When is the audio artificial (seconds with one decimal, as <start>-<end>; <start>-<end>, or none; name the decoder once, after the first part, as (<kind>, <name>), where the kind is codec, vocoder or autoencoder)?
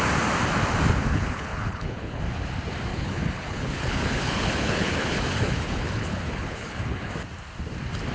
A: 1.1-2.2 (codec, HILCodec); 2.9-7.1